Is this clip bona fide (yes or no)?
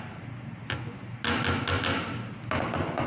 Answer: yes